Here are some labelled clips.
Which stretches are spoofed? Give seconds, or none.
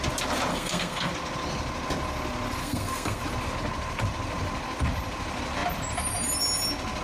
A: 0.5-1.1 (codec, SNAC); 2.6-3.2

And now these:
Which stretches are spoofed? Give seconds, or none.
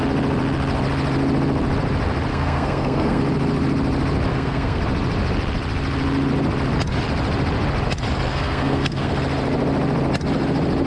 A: 2.3-3.2 (codec, SNAC); 4.3-4.8; 8.3-9.1